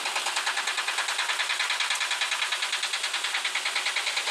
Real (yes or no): yes